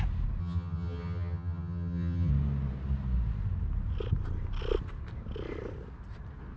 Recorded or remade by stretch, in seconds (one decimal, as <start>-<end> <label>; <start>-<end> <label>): 0.0-0.4 recorded; 0.4-2.3 remade; 2.3-6.6 recorded